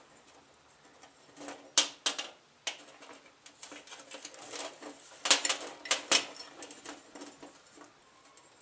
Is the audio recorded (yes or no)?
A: yes